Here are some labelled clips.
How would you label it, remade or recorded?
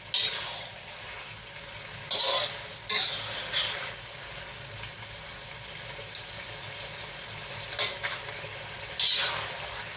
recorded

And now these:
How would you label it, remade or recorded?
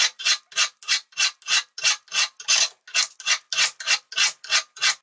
recorded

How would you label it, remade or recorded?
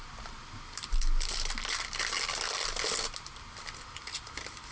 recorded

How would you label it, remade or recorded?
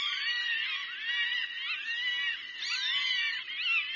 recorded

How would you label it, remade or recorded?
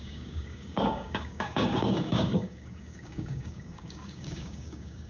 remade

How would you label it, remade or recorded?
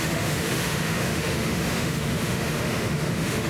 remade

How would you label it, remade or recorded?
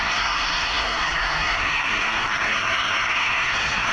remade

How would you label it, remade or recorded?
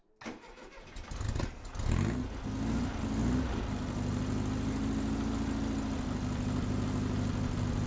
recorded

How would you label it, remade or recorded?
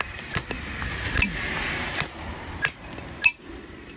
recorded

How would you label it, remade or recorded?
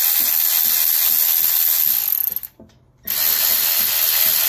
recorded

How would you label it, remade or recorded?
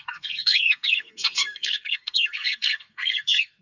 remade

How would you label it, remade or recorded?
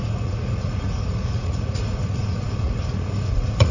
remade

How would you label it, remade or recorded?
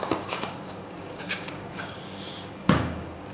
remade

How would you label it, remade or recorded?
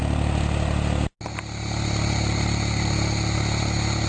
recorded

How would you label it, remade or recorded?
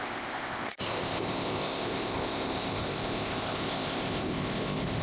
remade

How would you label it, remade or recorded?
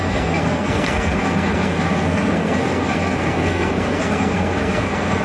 remade